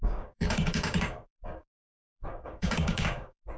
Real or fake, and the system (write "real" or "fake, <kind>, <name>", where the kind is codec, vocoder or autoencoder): fake, codec, DAC